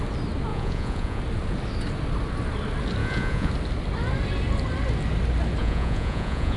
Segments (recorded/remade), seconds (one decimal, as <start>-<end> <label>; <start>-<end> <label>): 0.0-0.5 recorded; 0.5-1.2 remade; 1.2-3.0 recorded; 3.0-3.5 remade; 3.5-5.6 recorded; 5.6-6.6 remade